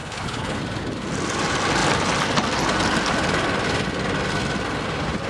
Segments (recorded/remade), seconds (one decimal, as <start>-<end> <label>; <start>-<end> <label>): 0.0-0.6 remade; 0.6-5.3 recorded